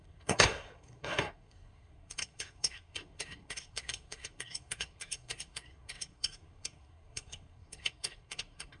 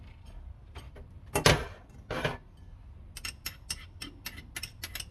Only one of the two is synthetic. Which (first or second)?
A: first